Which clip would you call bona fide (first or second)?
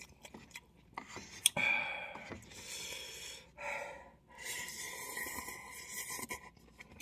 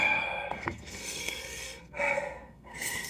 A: first